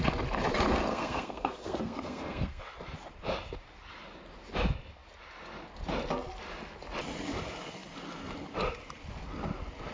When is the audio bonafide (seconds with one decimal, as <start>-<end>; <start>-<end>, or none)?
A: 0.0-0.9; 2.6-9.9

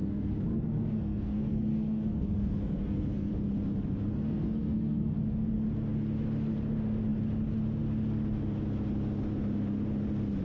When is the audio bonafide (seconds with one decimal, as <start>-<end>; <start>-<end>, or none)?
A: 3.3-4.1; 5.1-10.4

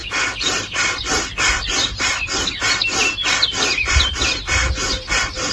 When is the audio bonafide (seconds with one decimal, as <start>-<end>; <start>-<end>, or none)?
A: 0.0-5.5

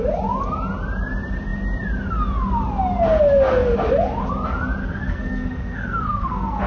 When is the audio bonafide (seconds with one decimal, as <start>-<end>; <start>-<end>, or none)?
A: 0.0-4.8

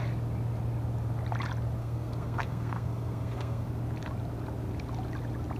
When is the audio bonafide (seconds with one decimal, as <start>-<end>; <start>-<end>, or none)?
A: 0.0-1.8; 3.7-5.6

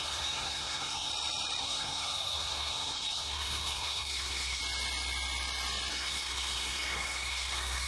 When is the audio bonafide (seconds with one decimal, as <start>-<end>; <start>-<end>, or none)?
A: 1.1-1.6; 4.6-5.9

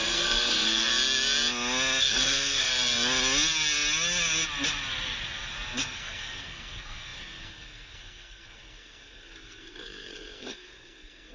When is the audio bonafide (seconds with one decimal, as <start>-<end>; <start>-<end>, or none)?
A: 0.9-2.0; 2.7-5.8

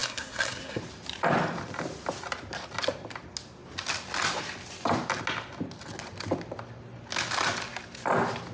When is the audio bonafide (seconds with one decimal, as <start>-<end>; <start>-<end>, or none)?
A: 0.8-8.5